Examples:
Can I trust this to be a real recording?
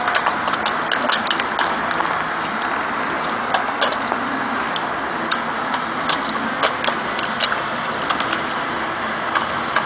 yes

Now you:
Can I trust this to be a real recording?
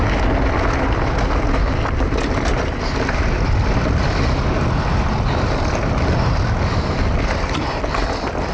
yes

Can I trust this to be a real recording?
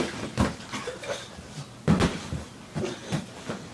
yes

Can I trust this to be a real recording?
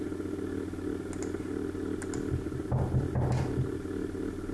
yes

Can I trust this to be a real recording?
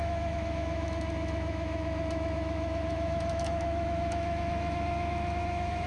no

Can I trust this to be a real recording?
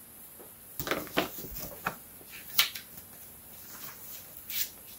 yes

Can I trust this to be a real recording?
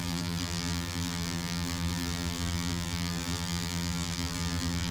no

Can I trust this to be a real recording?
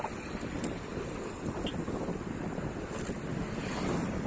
yes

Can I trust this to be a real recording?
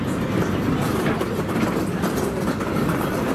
yes